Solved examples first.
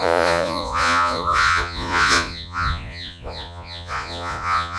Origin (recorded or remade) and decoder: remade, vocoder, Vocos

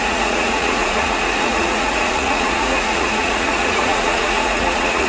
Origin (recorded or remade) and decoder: remade, vocoder, Vocos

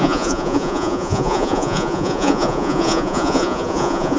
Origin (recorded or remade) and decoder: remade, vocoder, Vocos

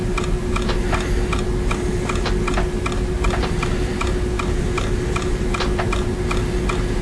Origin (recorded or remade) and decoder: recorded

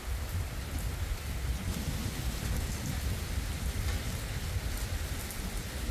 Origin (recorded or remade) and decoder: recorded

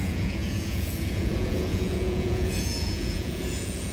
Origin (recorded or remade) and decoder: remade, vocoder, Vocos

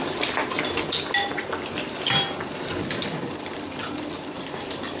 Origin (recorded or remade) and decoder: recorded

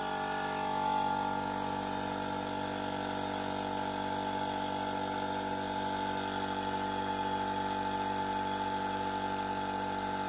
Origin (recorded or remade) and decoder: recorded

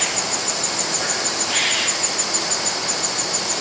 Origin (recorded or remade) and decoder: recorded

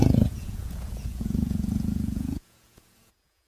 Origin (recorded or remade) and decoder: remade, vocoder, Vocos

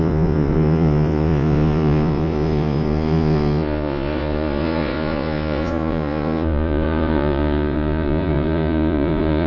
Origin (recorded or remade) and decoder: remade, vocoder, Vocos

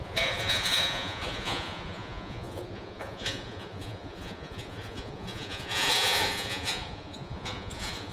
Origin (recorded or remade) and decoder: remade, vocoder, Vocos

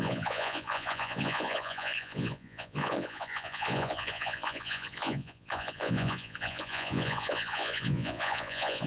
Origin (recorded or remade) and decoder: remade, vocoder, Vocos